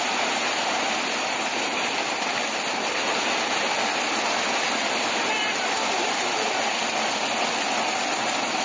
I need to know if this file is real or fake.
real